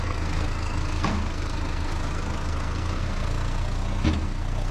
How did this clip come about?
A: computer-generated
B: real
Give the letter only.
A